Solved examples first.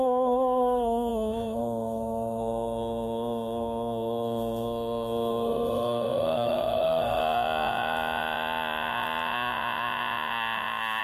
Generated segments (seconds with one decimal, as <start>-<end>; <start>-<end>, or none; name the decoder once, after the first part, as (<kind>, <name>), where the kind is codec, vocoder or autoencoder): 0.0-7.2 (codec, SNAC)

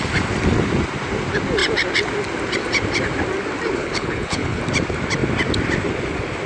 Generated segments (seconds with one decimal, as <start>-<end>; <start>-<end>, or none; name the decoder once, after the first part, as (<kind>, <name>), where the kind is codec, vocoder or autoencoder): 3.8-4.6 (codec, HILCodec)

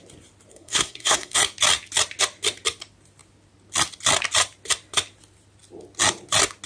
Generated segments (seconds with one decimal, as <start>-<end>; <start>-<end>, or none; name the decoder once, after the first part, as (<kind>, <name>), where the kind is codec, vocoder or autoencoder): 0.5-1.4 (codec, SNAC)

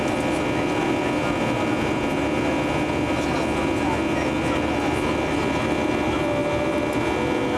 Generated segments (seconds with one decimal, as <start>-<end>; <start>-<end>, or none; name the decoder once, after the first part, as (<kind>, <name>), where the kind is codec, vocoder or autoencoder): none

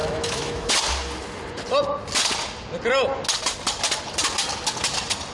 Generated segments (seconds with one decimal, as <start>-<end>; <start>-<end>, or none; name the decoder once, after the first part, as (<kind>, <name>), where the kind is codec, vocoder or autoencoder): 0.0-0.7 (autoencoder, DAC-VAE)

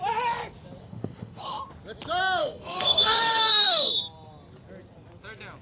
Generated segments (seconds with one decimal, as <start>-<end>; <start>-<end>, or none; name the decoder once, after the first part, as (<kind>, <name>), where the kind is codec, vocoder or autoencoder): 0.8-1.6 (autoencoder, DAC-VAE); 2.4-3.9

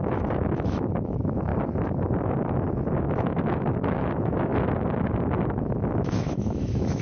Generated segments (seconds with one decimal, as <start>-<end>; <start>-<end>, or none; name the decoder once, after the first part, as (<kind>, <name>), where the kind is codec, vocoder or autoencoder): 0.0-1.5 (autoencoder, DAC-VAE); 3.0-4.5; 5.6-7.0